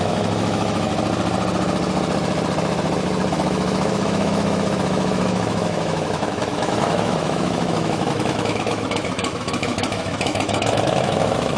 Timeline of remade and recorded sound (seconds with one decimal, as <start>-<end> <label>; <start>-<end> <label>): 0.0-0.9 remade; 0.9-3.3 recorded; 3.3-11.6 remade

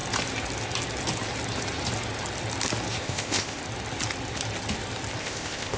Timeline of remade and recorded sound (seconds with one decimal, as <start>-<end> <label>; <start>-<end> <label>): 0.0-3.0 recorded; 3.0-3.6 remade; 3.6-5.2 recorded; 5.2-5.8 remade

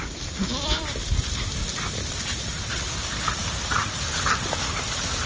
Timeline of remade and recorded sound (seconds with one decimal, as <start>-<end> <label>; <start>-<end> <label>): 0.0-5.3 recorded

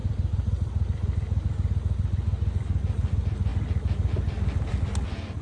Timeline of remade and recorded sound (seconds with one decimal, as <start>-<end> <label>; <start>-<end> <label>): 0.0-5.4 recorded

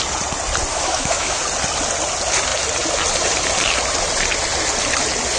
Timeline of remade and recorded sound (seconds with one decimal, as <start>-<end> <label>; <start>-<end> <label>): 0.0-0.7 recorded; 0.7-1.4 remade; 1.4-5.4 recorded